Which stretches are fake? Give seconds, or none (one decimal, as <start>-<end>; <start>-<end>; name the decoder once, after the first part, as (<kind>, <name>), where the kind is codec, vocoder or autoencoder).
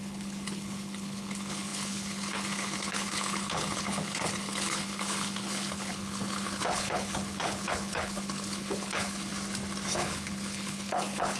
0.0-9.3 (codec, HILCodec); 9.9-11.4